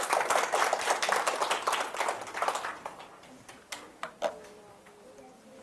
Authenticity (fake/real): real